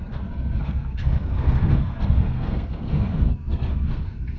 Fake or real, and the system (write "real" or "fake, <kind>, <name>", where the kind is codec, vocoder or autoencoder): fake, codec, SNAC